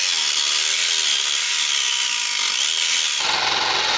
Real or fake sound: real